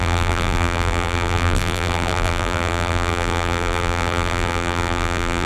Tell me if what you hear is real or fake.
fake